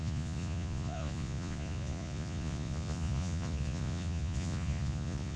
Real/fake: fake